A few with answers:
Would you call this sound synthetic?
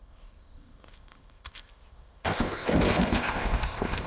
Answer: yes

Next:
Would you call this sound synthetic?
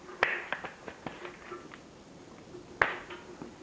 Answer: no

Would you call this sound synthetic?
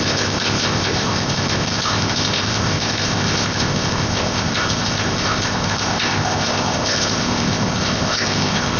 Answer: yes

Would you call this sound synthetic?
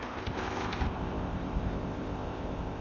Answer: yes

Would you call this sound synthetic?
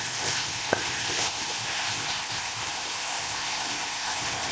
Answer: yes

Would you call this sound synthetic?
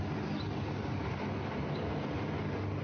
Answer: no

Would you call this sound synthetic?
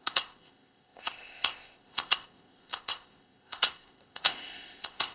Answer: yes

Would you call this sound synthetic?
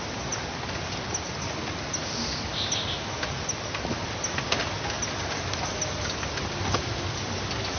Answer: no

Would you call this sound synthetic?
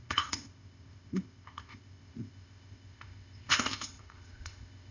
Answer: yes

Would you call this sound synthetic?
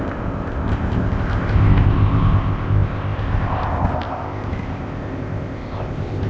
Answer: yes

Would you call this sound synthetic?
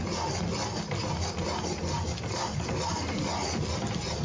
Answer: no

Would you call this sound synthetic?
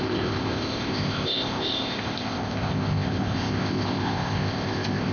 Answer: yes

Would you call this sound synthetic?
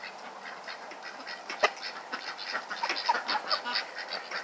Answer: no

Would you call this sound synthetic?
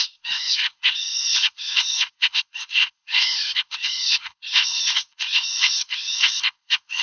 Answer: yes